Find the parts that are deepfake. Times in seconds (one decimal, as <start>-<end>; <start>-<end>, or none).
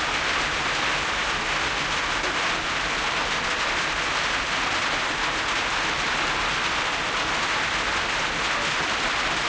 none